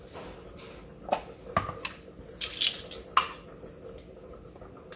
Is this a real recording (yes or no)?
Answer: yes